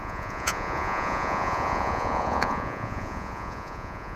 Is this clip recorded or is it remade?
remade